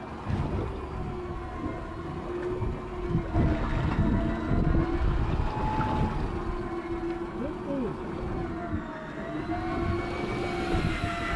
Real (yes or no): yes